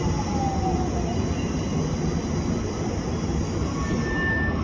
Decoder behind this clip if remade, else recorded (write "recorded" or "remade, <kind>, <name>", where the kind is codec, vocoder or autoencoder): recorded